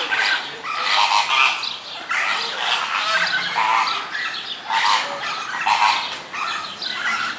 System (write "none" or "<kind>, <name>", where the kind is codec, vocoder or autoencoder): none